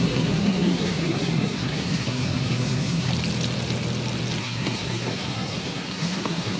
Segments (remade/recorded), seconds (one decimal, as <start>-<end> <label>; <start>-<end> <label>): 0.0-3.1 remade; 3.1-4.4 recorded; 4.4-6.6 remade